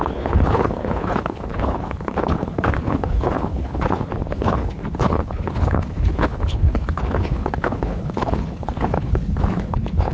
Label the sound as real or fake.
fake